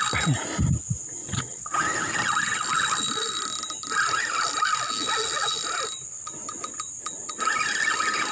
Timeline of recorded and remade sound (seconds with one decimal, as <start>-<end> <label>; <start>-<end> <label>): 0.0-1.2 recorded; 1.2-1.8 remade; 1.8-8.3 recorded